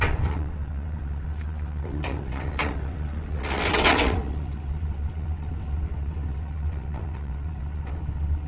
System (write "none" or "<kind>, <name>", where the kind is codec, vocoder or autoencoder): vocoder, WaveNeXt